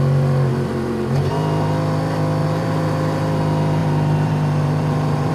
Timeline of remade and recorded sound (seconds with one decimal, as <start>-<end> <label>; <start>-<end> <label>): 0.0-0.5 recorded; 0.5-1.3 remade; 1.3-2.4 recorded; 2.4-3.2 remade; 3.2-3.8 recorded; 3.8-5.3 remade